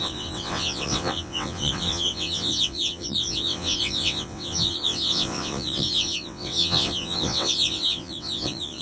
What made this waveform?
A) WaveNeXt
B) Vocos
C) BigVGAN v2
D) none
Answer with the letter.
A